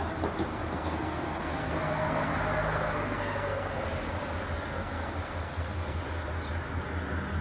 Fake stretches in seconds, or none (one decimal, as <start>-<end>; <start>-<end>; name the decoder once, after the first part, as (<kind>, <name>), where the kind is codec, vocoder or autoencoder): 0.5-3.8 (codec, SNAC); 4.7-6.0